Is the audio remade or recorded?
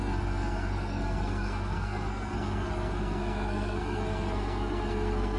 remade